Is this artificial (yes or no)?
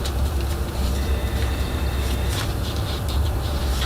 no